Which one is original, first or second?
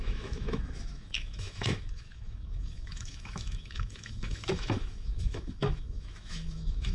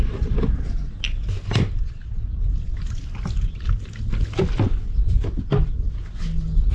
second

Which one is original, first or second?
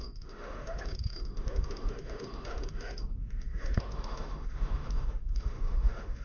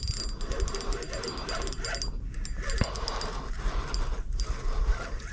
second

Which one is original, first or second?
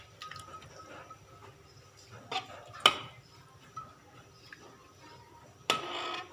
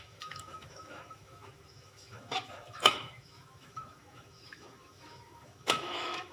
first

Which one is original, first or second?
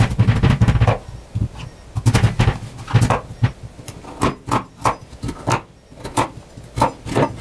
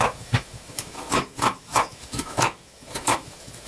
first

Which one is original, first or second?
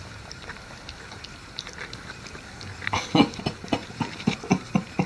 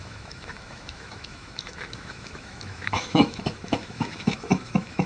first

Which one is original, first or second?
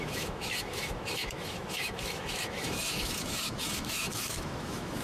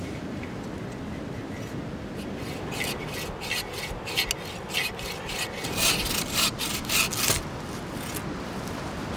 second